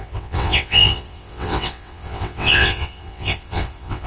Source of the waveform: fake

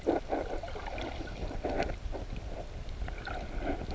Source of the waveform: real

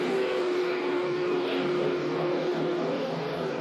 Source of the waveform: fake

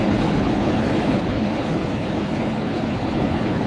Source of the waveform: fake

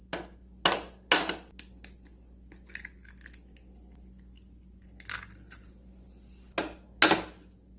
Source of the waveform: real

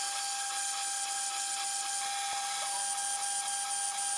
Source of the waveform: real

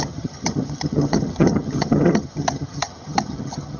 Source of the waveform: fake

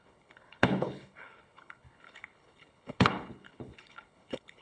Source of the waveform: fake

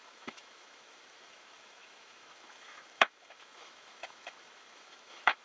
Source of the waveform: fake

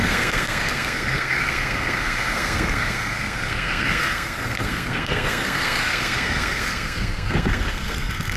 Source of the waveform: fake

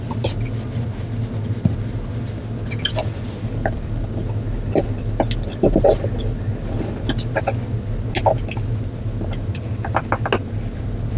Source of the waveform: real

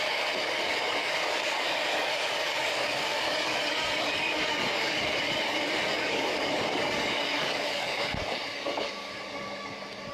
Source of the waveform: fake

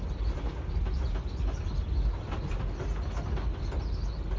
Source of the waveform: real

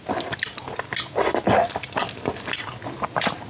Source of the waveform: real